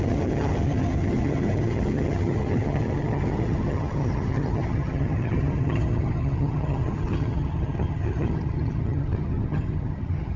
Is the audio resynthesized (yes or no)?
yes